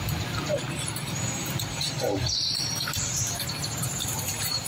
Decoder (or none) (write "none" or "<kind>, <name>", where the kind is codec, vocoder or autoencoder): vocoder, BigVGAN v2